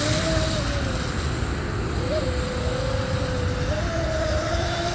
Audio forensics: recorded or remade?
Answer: recorded